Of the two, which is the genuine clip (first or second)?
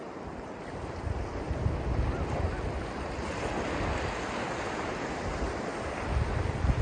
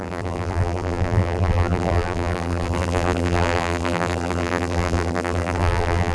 first